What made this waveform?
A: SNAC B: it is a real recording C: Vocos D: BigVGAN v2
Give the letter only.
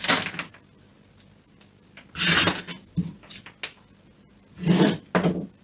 B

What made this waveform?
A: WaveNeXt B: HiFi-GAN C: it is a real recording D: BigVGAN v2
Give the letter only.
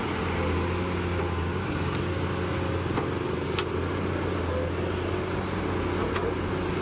C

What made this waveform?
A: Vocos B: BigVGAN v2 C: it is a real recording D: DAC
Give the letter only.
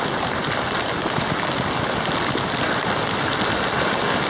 C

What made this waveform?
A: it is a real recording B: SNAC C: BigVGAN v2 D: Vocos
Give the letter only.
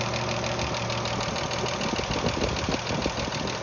A